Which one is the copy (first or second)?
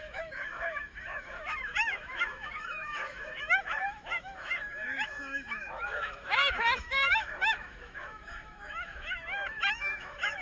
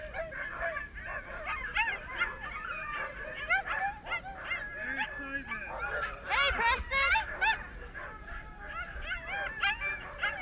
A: first